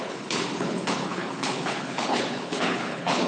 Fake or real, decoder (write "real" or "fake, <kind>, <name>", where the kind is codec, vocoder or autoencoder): fake, codec, HILCodec